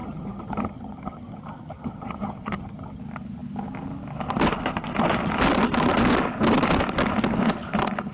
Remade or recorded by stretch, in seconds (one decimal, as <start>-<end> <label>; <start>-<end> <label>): 0.0-3.0 remade; 3.0-8.1 recorded